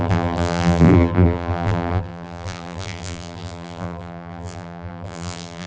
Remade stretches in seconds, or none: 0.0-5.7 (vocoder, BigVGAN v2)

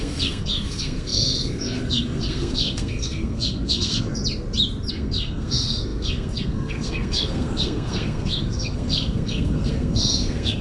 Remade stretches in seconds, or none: 0.0-4.2 (codec, SNAC); 4.9-10.6

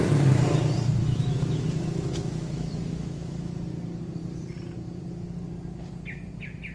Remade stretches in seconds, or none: 1.0-3.6 (autoencoder, DAC-VAE)

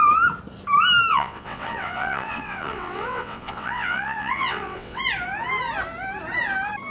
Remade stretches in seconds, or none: 1.1-5.0 (vocoder, WaveNeXt)

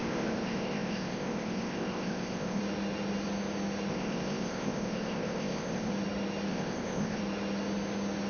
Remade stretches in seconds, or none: 0.0-2.6 (codec, ZipCodec); 3.9-5.9; 6.5-7.2

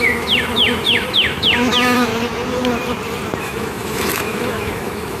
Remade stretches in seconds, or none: 0.0-2.1 (autoencoder, DAC-VAE); 3.4-5.2